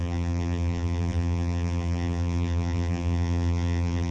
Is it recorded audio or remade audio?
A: remade